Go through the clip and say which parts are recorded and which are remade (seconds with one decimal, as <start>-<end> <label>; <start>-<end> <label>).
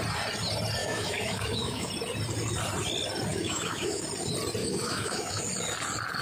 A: 0.0-0.8 recorded; 0.8-1.9 remade; 1.9-3.3 recorded; 3.3-4.0 remade; 4.0-4.6 recorded; 4.6-5.4 remade; 5.4-6.2 recorded